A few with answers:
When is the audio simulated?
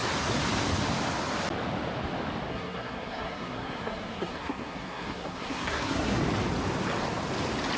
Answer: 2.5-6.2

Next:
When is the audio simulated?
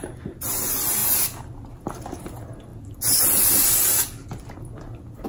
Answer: none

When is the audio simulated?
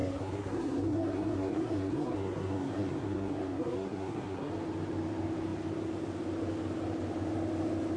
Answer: 0.0-4.5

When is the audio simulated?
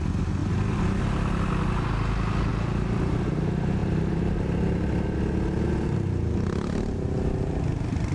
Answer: none